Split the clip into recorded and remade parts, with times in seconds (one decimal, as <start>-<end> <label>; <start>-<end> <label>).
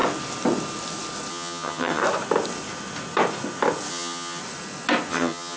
0.0-1.3 recorded; 1.3-2.0 remade; 2.0-3.9 recorded; 3.9-4.4 remade; 4.4-5.1 recorded; 5.1-5.6 remade